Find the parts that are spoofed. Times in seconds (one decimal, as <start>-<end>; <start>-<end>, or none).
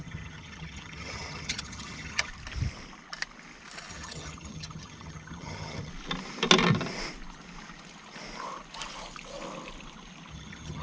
0.0-2.3; 3.9-5.9; 10.3-10.8